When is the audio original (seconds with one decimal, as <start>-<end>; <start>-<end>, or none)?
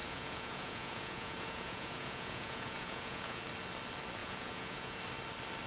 3.4-4.2; 5.0-5.7